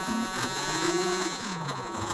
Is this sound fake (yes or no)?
yes